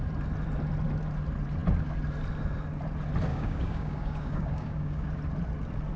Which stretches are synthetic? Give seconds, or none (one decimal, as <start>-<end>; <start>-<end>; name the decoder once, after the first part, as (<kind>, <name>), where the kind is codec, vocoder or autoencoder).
3.3-5.1 (codec, DAC)